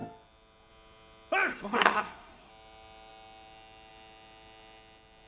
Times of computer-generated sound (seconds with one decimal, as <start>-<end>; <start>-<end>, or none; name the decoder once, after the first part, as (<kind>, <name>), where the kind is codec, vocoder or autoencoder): 1.5-2.5 (codec, SNAC)